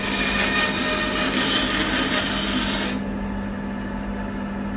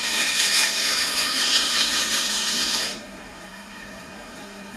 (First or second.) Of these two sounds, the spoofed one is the second